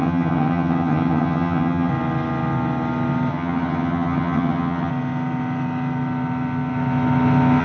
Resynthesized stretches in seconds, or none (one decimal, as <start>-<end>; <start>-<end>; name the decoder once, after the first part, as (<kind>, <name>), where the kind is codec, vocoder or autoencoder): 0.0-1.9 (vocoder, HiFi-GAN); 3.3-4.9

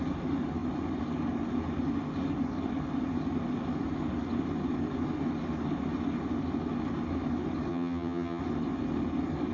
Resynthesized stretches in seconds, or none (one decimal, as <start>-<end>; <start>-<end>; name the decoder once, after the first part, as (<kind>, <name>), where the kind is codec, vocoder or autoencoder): 7.7-8.4 (vocoder, HiFi-GAN)

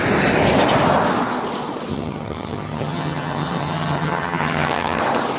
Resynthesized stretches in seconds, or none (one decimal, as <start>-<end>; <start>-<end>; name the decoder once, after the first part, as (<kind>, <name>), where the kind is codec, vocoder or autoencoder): 1.9-5.0 (vocoder, HiFi-GAN)

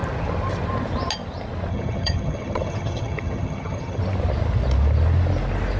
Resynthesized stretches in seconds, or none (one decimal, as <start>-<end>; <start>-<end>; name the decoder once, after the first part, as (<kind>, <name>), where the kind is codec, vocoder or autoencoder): 1.7-4.0 (vocoder, HiFi-GAN)

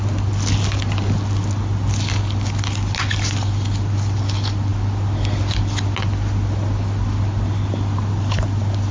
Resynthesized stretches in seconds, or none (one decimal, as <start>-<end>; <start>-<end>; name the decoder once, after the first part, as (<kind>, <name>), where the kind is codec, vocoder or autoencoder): none